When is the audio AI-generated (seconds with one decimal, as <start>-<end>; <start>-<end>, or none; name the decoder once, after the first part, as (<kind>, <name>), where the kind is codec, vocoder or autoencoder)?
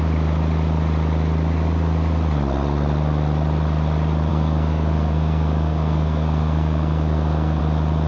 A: 4.3-7.6 (codec, SNAC)